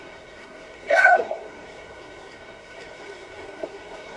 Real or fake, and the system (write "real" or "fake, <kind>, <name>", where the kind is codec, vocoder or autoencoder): fake, codec, SNAC